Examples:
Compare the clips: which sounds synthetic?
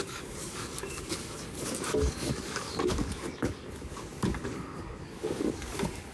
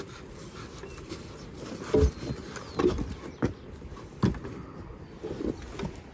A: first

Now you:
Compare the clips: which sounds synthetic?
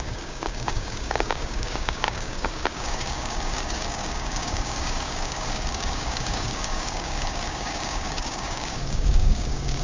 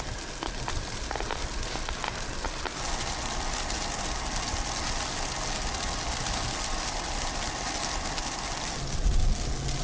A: first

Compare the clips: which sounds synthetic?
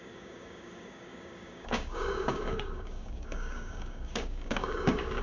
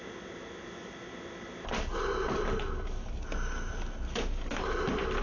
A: first